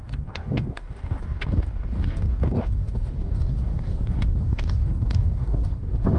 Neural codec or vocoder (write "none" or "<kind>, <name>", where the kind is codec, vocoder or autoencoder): codec, DAC